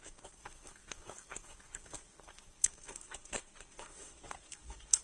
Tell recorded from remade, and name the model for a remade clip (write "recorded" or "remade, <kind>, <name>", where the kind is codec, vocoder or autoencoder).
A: remade, codec, SNAC